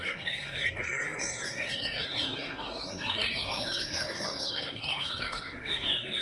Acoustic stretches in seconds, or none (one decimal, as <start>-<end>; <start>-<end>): none